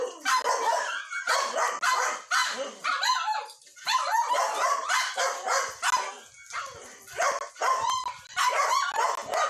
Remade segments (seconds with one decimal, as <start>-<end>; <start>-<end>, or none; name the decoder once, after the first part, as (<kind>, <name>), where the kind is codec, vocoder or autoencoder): 0.7-1.3 (vocoder, BigVGAN v2); 2.4-5.2